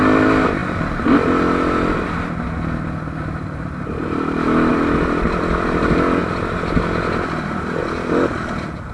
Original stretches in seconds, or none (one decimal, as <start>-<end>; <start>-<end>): 0.0-8.9